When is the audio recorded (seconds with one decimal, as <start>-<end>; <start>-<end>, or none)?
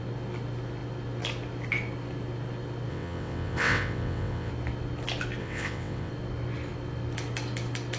0.0-2.9; 4.5-5.4; 6.1-8.0